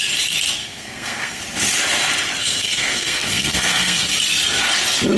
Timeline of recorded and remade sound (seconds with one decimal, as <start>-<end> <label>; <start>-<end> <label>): 0.0-0.6 recorded; 0.6-1.4 remade; 1.4-2.4 recorded; 2.4-4.1 remade; 4.1-5.2 recorded